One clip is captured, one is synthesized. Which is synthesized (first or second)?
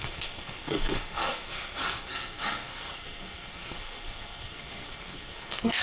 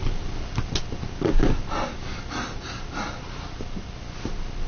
first